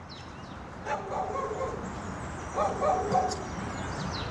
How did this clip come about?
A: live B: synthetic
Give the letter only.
A